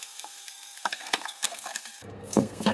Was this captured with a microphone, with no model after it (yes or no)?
no